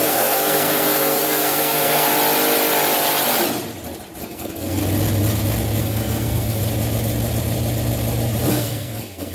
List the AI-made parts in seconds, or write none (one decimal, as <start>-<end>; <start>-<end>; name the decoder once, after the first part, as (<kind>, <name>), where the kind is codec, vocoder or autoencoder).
0.0-2.1 (codec, SNAC); 4.2-4.8; 5.8-6.6; 8.5-9.3